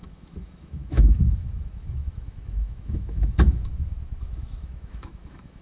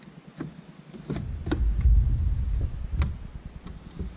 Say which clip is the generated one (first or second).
first